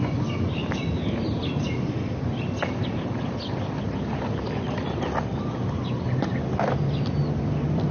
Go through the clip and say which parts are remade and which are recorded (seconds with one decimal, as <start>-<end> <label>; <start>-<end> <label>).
0.0-7.9 recorded